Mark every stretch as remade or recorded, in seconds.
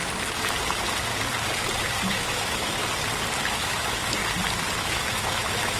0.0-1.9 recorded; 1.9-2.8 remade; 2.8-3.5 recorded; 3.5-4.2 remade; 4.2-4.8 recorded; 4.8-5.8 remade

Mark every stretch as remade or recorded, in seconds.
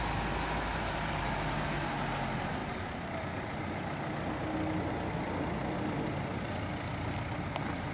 0.0-0.7 recorded; 0.7-1.9 remade; 1.9-2.6 recorded; 2.6-3.2 remade; 3.2-7.9 recorded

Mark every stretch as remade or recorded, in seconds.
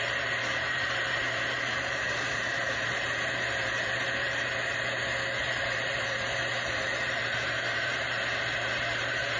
0.0-4.7 remade; 4.7-5.4 recorded; 5.4-9.4 remade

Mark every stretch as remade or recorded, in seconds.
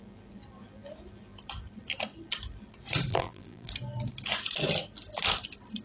0.0-3.1 recorded; 3.1-3.7 remade; 3.7-5.8 recorded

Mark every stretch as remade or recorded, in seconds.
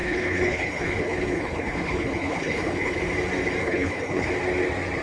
0.0-3.0 remade; 3.0-3.6 recorded; 3.6-4.3 remade; 4.3-5.0 recorded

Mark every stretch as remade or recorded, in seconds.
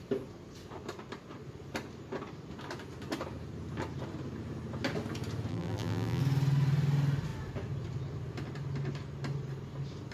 0.0-5.5 recorded; 5.5-6.2 remade; 6.2-10.1 recorded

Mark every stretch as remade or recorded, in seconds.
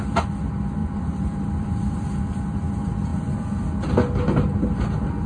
0.0-0.8 recorded; 0.8-2.4 remade; 2.4-3.1 recorded; 3.1-3.9 remade; 3.9-5.3 recorded